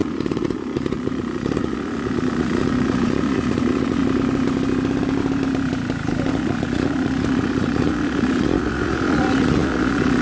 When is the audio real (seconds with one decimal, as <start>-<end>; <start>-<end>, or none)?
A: 4.0-6.3

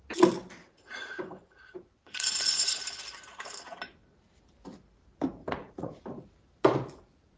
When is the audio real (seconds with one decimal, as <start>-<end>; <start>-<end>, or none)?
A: 0.0-0.6; 2.8-5.4; 6.0-7.4

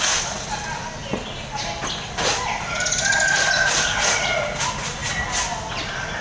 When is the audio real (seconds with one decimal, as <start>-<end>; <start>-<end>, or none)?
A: 0.0-6.2

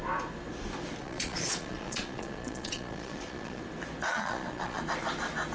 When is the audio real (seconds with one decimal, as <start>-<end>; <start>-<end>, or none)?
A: 0.0-1.0; 3.6-4.1; 4.8-5.5

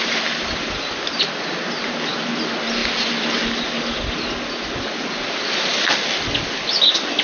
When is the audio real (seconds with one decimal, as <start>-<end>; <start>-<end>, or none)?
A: 0.0-7.2